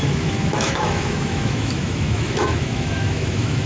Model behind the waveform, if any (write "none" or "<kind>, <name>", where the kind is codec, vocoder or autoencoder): autoencoder, DAC-VAE